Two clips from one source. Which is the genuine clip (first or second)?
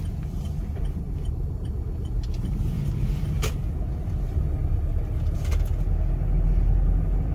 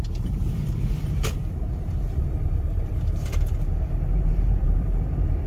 first